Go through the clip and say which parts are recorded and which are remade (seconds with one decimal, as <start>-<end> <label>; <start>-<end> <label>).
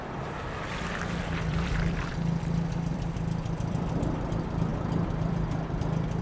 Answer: 0.0-1.5 recorded; 1.5-2.1 remade; 2.1-2.9 recorded; 2.9-3.9 remade; 3.9-4.7 recorded; 4.7-6.2 remade